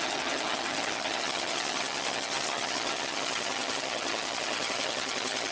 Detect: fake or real fake